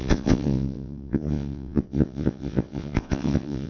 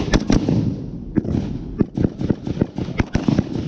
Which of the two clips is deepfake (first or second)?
first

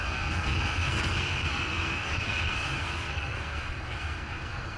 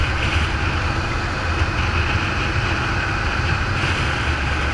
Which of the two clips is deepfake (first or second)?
first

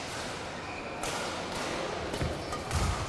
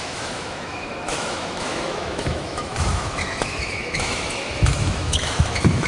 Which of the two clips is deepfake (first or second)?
second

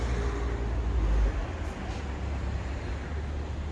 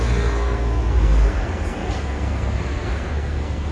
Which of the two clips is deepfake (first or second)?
second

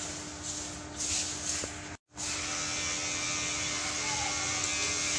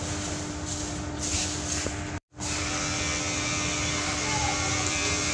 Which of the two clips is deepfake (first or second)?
second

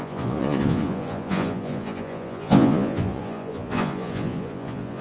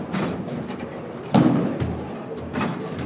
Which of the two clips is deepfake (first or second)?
first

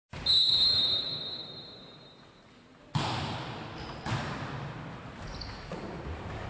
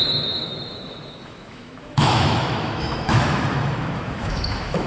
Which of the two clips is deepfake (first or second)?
second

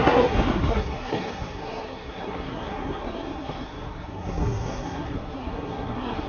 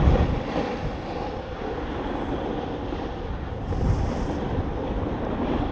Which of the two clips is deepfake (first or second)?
first